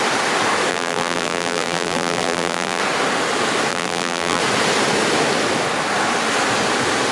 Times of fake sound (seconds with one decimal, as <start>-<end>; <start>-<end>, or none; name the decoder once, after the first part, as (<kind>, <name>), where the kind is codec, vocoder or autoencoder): 0.7-2.8 (vocoder, BigVGAN v2); 3.7-4.4